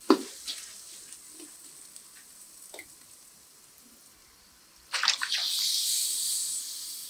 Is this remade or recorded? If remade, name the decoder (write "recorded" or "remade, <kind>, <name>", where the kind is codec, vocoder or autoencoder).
remade, vocoder, BigVGAN v2